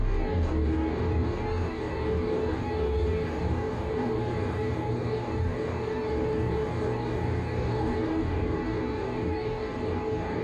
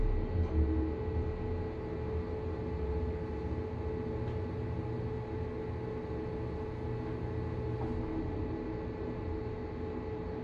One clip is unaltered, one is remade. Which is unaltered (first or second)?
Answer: second